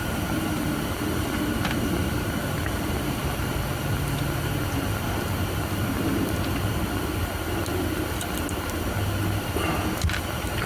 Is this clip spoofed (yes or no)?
no